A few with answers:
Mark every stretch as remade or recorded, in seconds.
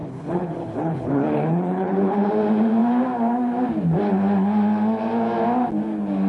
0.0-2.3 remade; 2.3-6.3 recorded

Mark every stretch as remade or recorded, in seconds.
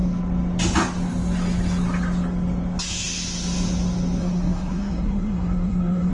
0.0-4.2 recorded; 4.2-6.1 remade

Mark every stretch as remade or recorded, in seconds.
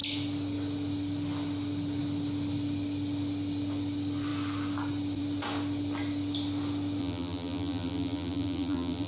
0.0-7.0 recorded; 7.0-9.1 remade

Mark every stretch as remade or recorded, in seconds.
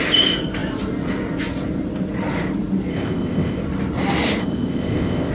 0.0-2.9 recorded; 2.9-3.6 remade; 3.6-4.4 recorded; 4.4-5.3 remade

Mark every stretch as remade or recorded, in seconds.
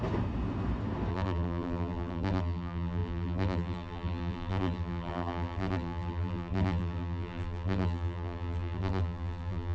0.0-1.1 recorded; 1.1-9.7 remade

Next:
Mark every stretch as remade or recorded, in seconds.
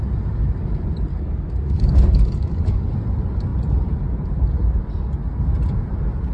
0.0-1.1 recorded; 1.1-2.9 remade; 2.9-6.3 recorded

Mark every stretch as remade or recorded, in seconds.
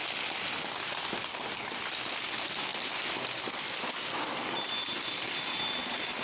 0.0-6.2 recorded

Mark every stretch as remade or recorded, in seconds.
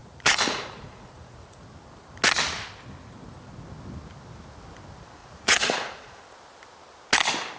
0.0-1.6 remade; 1.6-5.2 recorded; 5.2-6.2 remade; 6.2-7.6 recorded